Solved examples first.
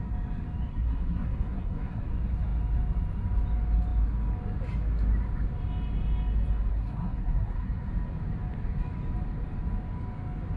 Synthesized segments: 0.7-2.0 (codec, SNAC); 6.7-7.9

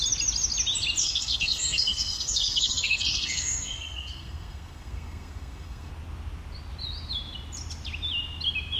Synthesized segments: 1.0-5.9 (codec, SNAC)

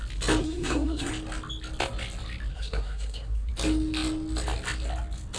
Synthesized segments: 0.4-1.1 (codec, SNAC); 2.5-3.5